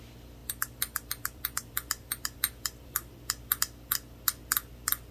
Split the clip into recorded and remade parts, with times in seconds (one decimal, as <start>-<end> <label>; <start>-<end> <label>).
0.0-0.4 recorded; 0.4-3.1 remade; 3.1-5.1 recorded